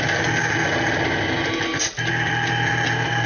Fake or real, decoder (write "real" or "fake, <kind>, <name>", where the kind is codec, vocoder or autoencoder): real